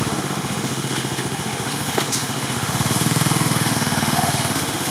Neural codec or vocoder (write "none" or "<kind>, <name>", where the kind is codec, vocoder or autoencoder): autoencoder, DAC-VAE